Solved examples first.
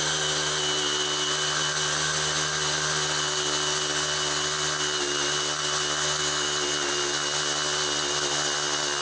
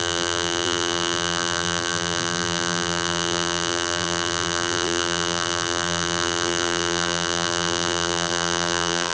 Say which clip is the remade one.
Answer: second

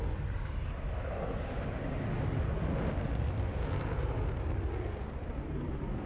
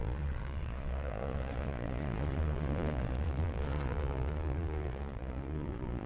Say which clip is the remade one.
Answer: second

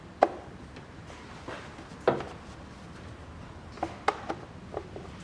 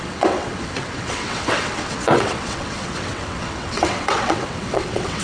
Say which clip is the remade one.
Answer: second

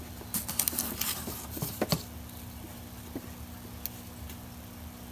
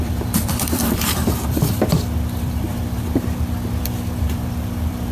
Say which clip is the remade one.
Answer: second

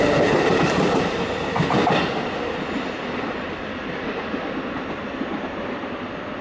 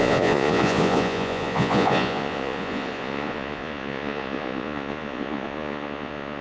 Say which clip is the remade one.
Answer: second